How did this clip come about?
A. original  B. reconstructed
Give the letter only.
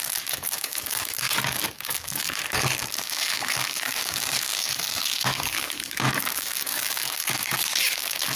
B